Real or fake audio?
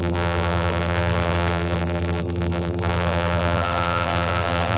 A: fake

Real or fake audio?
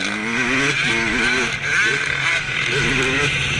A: real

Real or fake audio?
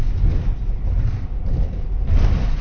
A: real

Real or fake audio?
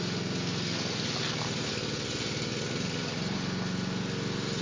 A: real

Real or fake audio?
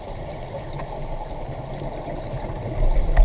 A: real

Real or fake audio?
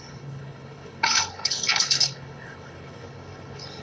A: fake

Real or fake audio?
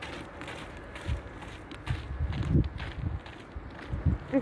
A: real